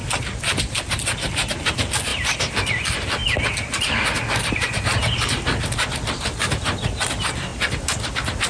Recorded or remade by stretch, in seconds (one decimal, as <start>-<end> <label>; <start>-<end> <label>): 0.0-8.5 recorded